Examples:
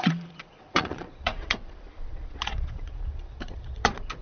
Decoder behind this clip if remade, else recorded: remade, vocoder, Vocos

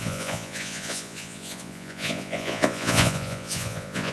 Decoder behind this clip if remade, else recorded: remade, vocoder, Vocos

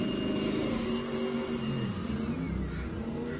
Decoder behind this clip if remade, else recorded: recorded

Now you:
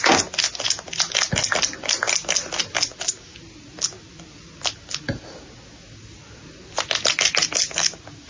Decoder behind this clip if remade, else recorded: recorded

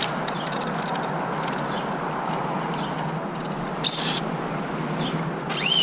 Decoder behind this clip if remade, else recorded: recorded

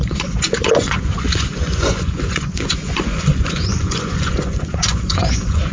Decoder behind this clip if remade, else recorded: remade, vocoder, Vocos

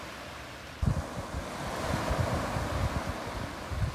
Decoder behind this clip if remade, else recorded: recorded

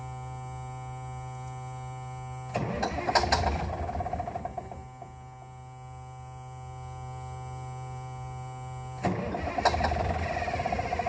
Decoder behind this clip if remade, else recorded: recorded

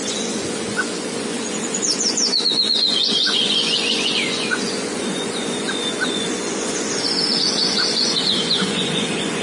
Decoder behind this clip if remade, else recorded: remade, vocoder, Vocos